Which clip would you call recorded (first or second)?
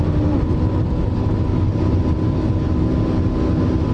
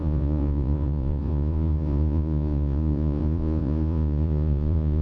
first